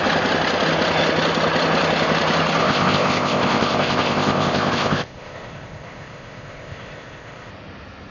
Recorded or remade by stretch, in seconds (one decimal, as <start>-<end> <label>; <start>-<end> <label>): 0.0-2.6 recorded; 2.6-7.5 remade; 7.5-8.1 recorded